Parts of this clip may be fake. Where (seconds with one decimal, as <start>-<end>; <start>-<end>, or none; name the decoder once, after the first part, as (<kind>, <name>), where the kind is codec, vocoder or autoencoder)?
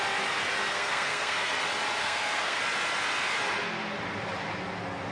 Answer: 0.7-1.5 (codec, SNAC); 2.0-2.6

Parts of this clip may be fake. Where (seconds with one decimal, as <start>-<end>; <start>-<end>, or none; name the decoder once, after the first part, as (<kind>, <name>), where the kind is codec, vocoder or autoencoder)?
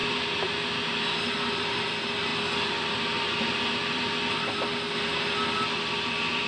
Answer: 1.5-2.3 (vocoder, BigVGAN v2)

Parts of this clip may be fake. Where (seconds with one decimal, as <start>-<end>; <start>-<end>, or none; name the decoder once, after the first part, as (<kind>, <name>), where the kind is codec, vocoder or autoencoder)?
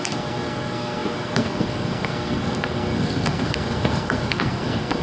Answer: 0.0-5.0 (codec, SNAC)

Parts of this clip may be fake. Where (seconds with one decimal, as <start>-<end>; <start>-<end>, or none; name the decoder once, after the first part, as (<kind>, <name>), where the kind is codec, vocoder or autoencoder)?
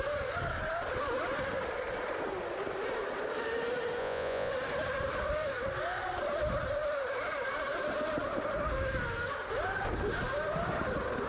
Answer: 4.0-4.5 (vocoder, Vocos)